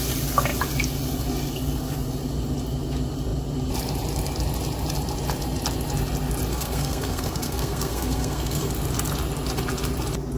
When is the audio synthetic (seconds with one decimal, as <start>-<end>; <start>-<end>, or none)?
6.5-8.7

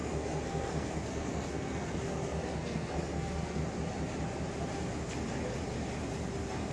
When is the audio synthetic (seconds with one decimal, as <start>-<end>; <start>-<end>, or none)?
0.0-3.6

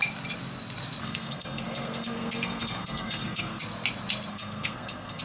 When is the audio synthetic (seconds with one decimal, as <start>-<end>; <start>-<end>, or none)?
1.0-3.6; 4.3-5.2